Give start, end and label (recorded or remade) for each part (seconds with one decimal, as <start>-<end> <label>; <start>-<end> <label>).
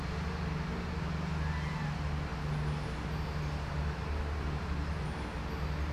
0.0-5.9 recorded